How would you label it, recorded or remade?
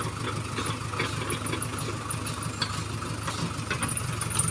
recorded